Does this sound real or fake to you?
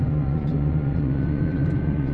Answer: fake